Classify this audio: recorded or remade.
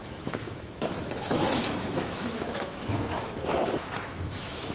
remade